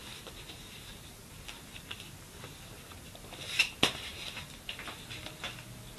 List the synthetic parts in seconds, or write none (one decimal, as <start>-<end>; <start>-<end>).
none